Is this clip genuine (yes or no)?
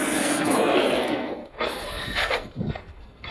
no